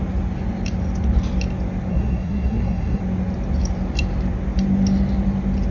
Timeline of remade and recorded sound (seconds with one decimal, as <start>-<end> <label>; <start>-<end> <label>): 0.0-1.9 recorded; 1.9-3.0 remade; 3.0-5.7 recorded